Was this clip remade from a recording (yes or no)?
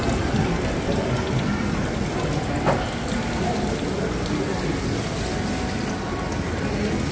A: no